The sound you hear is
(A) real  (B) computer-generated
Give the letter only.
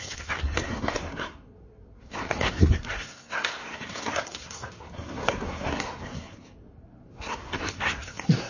B